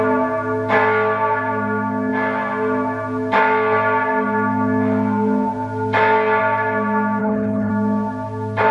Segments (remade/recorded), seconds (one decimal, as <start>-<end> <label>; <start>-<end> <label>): 0.0-7.2 recorded; 7.2-7.7 remade; 7.7-8.7 recorded